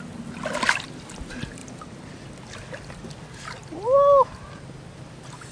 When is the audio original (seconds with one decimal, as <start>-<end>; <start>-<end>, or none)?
0.0-5.5